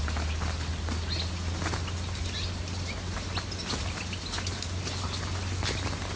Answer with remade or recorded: recorded